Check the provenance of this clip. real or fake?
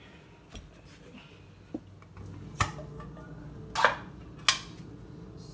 real